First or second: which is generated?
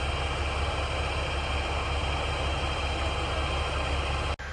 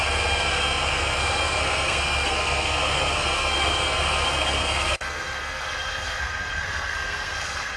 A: second